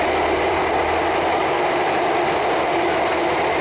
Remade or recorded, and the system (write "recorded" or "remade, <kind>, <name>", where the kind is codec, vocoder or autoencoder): remade, vocoder, BigVGAN v2